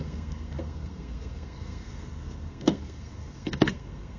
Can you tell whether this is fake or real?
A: fake